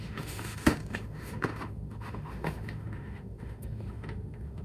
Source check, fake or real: fake